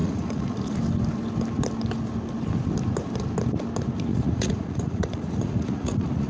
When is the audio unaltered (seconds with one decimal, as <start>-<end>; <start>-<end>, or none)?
0.8-4.1